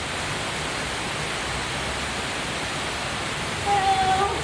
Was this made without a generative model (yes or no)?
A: yes